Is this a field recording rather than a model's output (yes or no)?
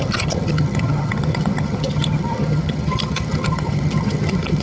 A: no